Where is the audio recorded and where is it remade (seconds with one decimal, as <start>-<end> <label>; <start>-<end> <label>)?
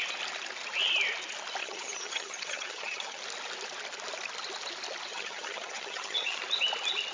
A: 0.0-1.6 recorded; 1.6-3.2 remade; 3.2-5.1 recorded; 5.1-6.4 remade; 6.4-7.1 recorded